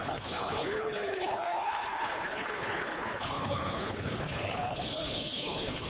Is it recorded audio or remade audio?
remade